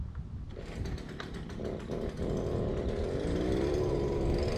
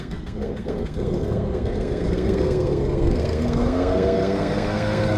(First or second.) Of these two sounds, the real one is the first